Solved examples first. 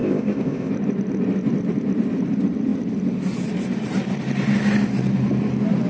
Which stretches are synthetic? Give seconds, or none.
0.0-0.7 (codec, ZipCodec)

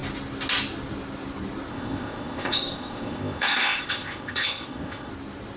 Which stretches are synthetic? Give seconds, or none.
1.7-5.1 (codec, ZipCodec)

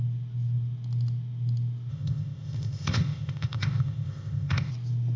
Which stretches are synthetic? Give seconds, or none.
1.9-4.7 (codec, ZipCodec)